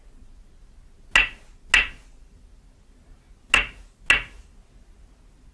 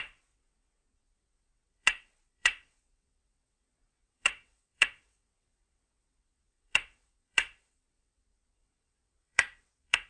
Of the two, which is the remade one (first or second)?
second